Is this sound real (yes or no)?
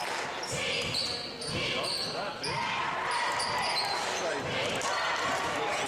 yes